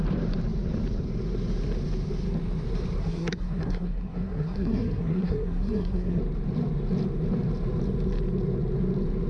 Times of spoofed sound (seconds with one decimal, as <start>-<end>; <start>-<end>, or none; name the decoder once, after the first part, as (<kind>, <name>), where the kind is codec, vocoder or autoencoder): 3.0-6.2 (codec, SNAC)